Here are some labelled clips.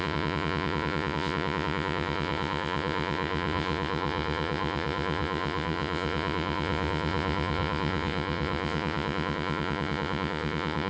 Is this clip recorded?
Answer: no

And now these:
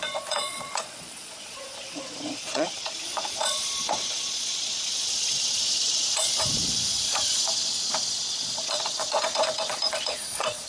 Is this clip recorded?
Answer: no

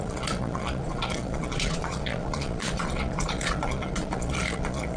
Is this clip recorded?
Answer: no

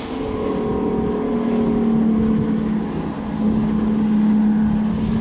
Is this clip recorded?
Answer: yes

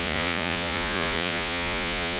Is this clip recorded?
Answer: no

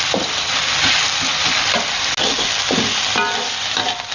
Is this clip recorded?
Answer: yes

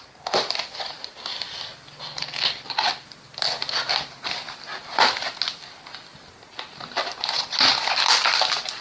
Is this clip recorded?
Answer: yes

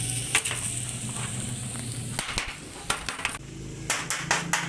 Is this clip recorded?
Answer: yes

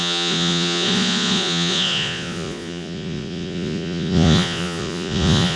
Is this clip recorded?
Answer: no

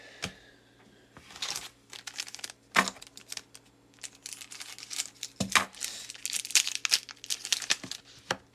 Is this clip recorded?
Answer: yes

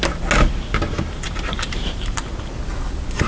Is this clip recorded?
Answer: yes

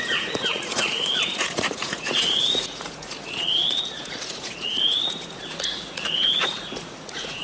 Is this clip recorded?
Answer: no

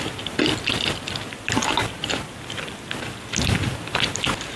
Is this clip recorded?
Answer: yes